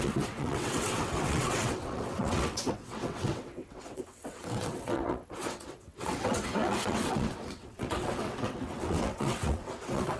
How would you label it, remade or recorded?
remade